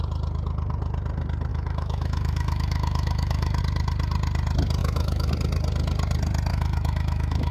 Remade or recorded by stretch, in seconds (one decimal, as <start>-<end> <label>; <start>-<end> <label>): 0.0-1.5 recorded; 1.5-3.6 remade; 3.6-4.8 recorded; 4.8-5.3 remade; 5.3-6.5 recorded; 6.5-7.5 remade